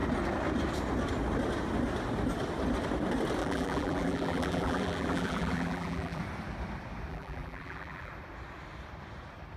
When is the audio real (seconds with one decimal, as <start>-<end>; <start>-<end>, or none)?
0.0-3.4; 6.2-7.1; 8.1-9.6